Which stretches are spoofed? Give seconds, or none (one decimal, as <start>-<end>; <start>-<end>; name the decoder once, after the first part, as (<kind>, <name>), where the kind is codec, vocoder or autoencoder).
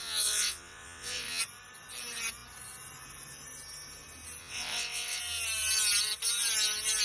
0.0-1.4 (vocoder, WaveNeXt); 4.4-5.2